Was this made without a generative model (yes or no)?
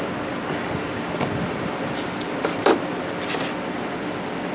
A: yes